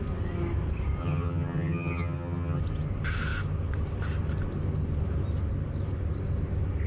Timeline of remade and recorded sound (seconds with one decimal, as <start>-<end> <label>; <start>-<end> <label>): 0.0-1.0 recorded; 1.0-2.6 remade; 2.6-6.9 recorded